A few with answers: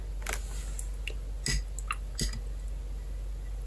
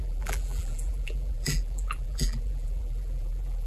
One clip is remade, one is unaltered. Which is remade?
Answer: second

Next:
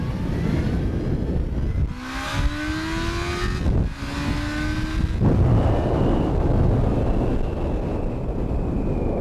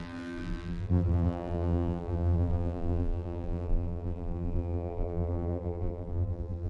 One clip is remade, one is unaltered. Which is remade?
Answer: second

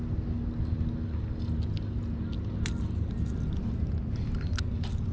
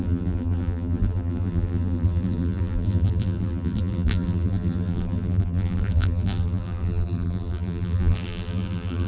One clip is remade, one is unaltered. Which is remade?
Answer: second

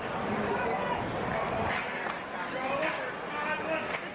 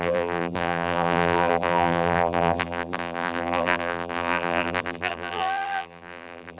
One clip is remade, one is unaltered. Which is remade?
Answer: second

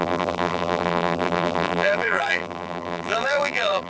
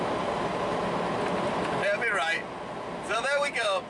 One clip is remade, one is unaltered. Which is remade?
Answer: first